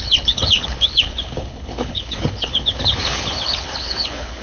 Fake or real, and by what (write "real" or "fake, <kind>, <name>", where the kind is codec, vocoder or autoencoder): fake, codec, HILCodec